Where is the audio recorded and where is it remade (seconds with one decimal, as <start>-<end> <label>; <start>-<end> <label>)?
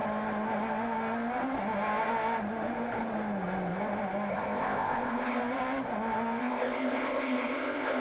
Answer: 0.0-4.3 recorded; 4.3-5.4 remade; 5.4-6.4 recorded; 6.4-8.0 remade